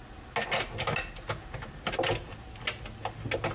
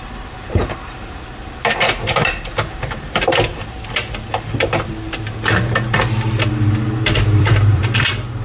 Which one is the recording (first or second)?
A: first